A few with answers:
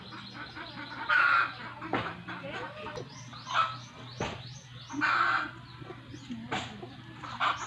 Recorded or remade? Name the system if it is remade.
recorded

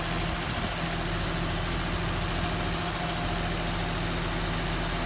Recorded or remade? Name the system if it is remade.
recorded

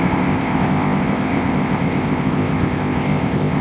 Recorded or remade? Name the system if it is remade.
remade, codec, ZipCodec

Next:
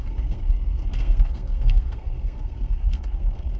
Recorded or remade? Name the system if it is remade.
remade, codec, SNAC